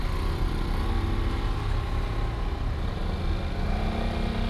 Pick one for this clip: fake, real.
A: real